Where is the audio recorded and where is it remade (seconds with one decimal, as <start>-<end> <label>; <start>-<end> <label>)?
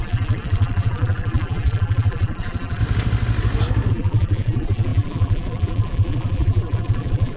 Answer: 0.0-2.8 remade; 2.8-3.9 recorded; 3.9-7.4 remade